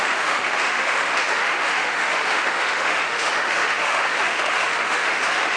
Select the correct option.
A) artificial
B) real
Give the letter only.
A